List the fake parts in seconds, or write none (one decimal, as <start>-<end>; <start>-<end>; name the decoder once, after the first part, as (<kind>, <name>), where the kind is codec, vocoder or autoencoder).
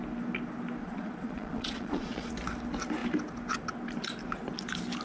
0.8-2.3 (vocoder, Vocos)